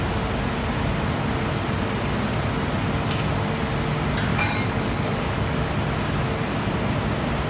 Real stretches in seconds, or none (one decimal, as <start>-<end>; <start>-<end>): 0.0-4.3; 5.7-7.5